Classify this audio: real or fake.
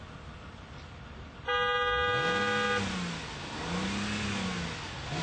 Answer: real